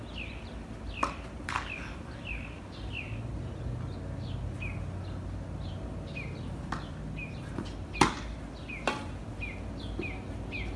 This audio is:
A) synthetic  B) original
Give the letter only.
B